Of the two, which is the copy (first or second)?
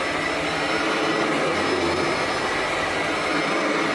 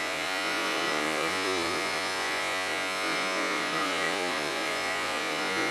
second